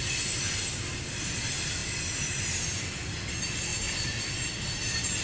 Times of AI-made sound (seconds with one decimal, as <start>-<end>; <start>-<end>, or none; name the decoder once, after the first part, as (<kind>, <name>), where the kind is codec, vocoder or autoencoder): none